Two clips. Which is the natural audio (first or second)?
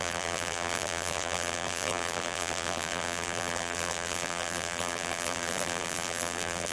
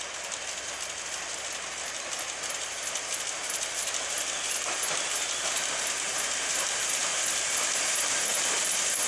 second